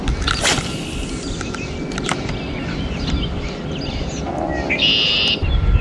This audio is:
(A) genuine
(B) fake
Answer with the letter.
A